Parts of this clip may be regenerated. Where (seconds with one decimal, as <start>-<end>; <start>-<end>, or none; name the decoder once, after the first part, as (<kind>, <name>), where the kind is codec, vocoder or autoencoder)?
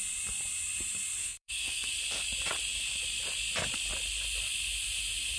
1.2-1.9 (autoencoder, DAC-VAE)